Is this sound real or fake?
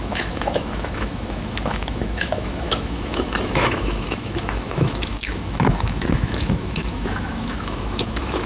fake